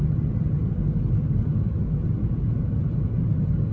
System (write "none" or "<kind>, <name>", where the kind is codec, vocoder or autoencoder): none